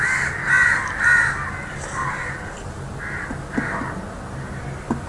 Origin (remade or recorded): recorded